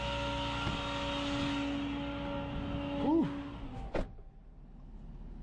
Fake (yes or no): no